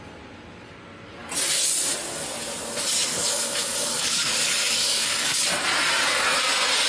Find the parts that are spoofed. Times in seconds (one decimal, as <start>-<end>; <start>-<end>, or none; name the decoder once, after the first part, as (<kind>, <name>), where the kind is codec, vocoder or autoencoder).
3.1-5.5 (codec, DAC)